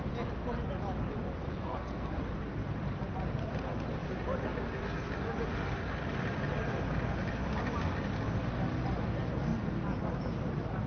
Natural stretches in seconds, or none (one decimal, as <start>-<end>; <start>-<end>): 0.0-1.6; 2.1-10.9